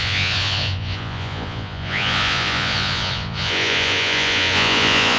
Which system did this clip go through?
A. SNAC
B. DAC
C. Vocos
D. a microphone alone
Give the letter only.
C